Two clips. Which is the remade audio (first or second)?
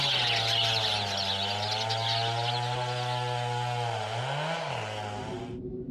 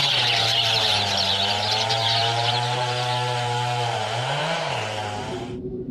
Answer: second